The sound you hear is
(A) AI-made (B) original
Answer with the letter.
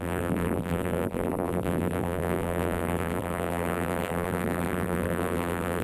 A